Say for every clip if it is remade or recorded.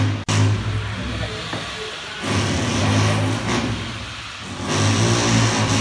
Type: recorded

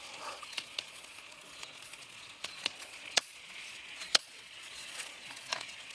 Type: remade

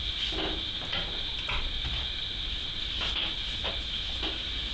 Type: recorded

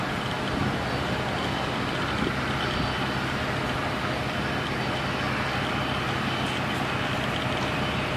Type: recorded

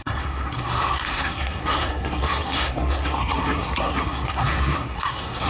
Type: remade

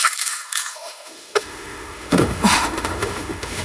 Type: remade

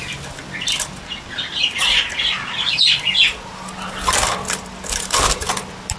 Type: recorded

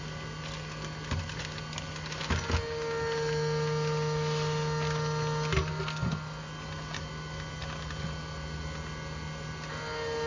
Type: recorded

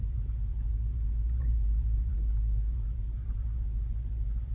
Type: remade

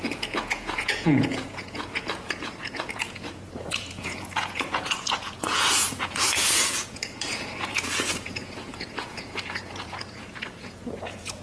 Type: remade